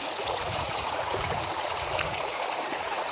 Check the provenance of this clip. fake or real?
fake